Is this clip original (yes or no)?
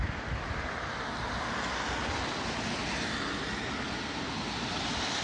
yes